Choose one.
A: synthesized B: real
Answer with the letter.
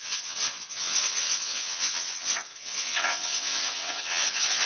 A